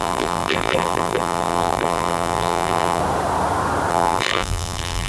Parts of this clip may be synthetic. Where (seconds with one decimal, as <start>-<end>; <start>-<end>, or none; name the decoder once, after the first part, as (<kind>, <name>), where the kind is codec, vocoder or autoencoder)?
0.0-3.0 (vocoder, BigVGAN v2); 3.9-5.1

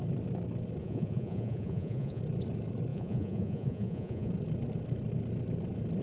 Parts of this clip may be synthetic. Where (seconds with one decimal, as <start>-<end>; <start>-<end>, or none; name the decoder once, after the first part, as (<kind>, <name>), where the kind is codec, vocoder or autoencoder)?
0.8-2.2 (vocoder, Vocos); 2.9-4.3

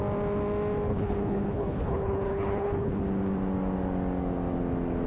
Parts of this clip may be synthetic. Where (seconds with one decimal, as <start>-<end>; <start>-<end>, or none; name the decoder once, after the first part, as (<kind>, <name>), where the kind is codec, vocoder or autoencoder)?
0.9-3.0 (codec, HILCodec)